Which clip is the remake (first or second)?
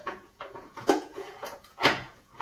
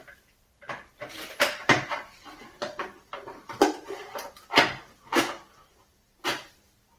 first